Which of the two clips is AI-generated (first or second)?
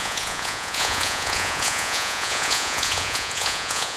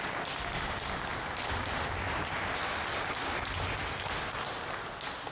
first